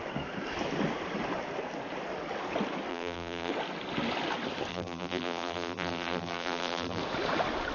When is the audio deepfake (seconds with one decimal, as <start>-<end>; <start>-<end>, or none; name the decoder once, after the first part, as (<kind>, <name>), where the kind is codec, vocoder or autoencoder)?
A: 2.9-3.5 (vocoder, BigVGAN v2); 4.7-7.0